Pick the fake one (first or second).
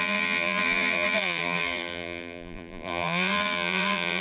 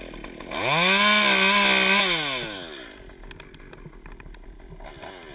first